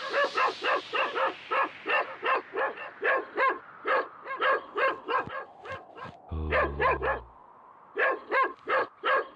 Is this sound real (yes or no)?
yes